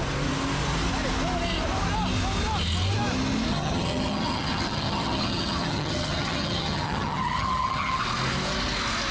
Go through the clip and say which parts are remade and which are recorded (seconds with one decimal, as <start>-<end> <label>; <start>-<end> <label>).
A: 0.0-3.5 recorded; 3.5-8.0 remade; 8.0-9.1 recorded